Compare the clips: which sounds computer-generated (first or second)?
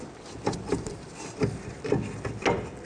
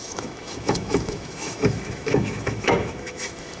second